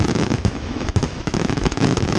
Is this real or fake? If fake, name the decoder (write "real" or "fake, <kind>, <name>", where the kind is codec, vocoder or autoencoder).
fake, autoencoder, DAC-VAE